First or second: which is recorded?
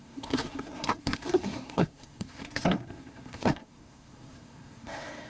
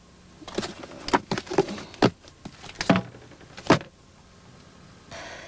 second